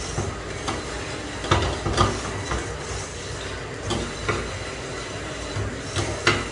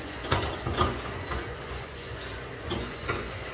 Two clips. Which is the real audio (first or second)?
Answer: first